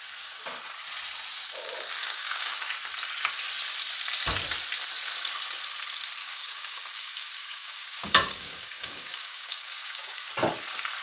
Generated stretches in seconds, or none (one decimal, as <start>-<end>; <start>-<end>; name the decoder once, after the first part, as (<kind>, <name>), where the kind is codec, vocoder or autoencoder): 2.0-2.7 (codec, DAC); 6.2-10.3